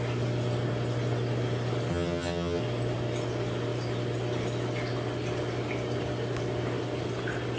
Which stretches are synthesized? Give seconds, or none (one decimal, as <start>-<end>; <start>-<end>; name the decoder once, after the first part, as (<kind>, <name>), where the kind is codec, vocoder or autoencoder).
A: 1.9-2.6 (vocoder, HiFi-GAN)